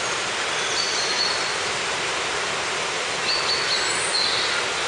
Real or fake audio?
real